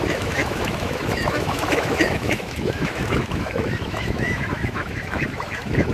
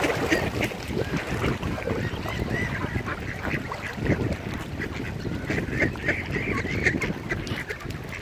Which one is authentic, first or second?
second